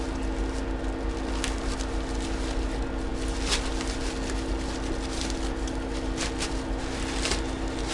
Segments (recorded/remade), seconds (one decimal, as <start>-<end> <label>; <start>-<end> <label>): 0.0-7.9 recorded